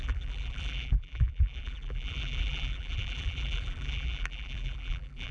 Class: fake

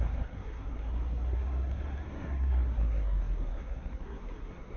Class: fake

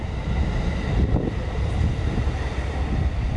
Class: real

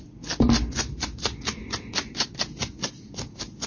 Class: real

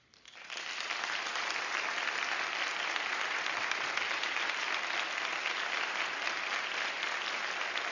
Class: real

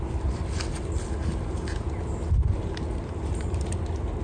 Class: real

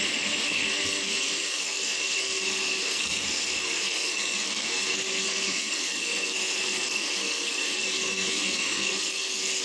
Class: fake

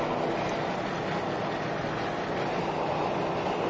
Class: real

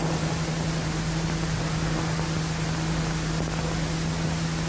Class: real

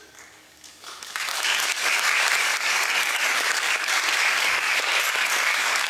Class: fake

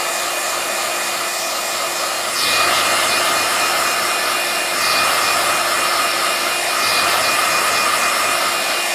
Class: real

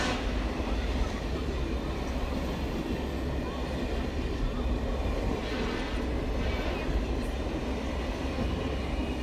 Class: real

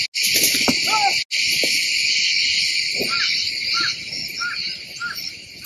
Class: real